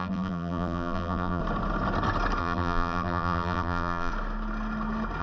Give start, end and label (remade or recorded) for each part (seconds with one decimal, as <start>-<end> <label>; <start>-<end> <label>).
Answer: 0.0-1.4 remade; 1.4-2.4 recorded; 2.4-4.1 remade; 4.1-5.2 recorded